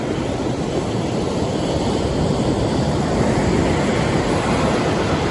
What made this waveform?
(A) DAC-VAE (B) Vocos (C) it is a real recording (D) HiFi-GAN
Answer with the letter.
C